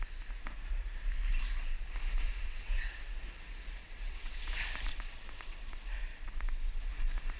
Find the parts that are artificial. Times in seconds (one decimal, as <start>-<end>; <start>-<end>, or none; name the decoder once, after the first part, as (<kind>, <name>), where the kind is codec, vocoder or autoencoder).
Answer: 2.4-3.2 (vocoder, WaveNeXt); 3.8-4.5; 4.9-6.8